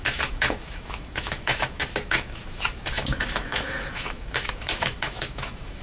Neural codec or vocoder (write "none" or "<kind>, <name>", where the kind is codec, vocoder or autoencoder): autoencoder, DAC-VAE